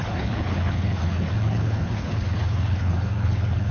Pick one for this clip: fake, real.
fake